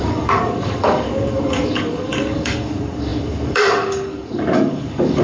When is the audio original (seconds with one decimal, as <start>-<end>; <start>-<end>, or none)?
none